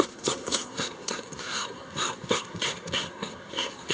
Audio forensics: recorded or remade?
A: remade